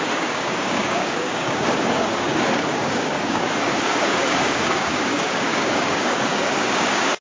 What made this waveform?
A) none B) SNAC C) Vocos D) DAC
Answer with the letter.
D